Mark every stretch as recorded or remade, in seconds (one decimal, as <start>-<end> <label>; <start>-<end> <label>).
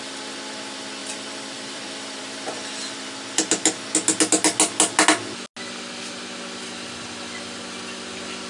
0.0-1.0 recorded; 1.0-3.0 remade; 3.0-8.5 recorded